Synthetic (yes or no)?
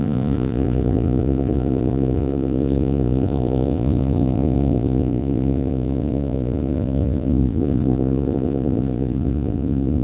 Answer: yes